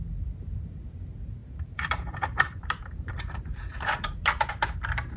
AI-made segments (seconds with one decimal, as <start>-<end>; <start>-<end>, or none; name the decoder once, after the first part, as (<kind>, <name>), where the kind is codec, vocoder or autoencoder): 1.4-4.5 (vocoder, BigVGAN v2)